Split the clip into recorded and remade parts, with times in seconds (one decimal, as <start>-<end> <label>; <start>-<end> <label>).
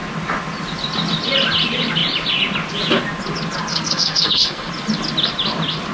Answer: 0.0-3.7 recorded; 3.7-4.7 remade; 4.7-5.9 recorded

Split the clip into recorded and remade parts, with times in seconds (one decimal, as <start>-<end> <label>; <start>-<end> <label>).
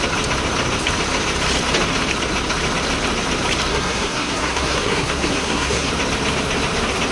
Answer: 0.0-3.7 recorded; 3.7-5.9 remade; 5.9-7.1 recorded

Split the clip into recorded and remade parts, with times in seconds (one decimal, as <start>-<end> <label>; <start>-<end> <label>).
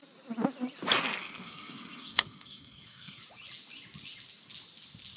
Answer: 0.0-1.2 recorded; 1.2-3.2 remade; 3.2-5.2 recorded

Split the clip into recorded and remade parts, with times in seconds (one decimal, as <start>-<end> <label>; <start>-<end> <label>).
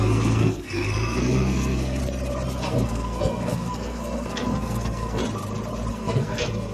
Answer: 0.0-2.0 remade; 2.0-2.6 recorded; 2.6-5.2 remade; 5.2-5.9 recorded; 5.9-6.7 remade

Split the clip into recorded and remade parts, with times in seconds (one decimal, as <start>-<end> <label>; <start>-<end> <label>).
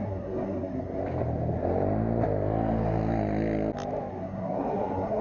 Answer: 0.0-1.0 remade; 1.0-4.1 recorded; 4.1-5.2 remade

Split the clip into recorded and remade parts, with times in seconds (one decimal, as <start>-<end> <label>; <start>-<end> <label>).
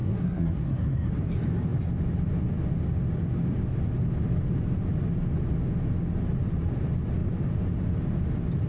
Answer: 0.0-1.2 remade; 1.2-8.7 recorded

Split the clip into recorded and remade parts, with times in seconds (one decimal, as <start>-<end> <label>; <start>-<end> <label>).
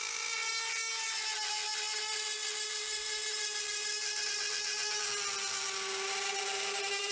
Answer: 0.0-7.1 recorded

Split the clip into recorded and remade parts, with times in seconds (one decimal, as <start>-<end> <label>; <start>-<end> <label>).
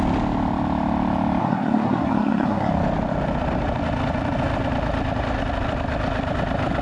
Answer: 0.0-1.4 recorded; 1.4-2.7 remade; 2.7-6.8 recorded